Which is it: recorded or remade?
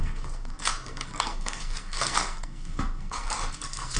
remade